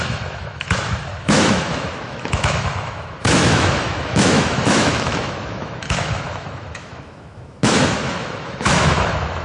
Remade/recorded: remade